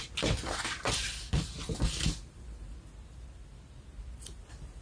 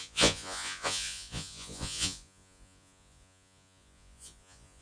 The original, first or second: first